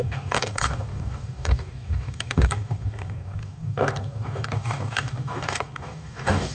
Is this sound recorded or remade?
remade